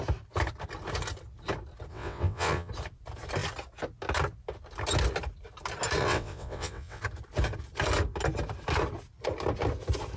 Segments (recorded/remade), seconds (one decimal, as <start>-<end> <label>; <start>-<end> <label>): 0.0-1.9 recorded; 1.9-2.7 remade; 2.7-6.0 recorded; 6.0-7.0 remade; 7.0-10.2 recorded